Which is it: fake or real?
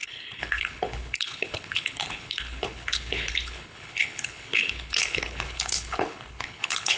fake